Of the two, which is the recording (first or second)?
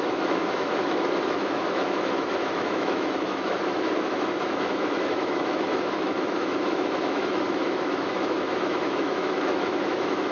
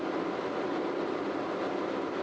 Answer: second